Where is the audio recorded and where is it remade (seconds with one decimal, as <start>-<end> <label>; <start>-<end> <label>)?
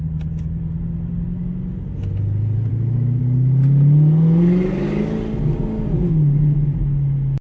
0.0-2.7 recorded; 2.7-3.2 remade; 3.2-7.4 recorded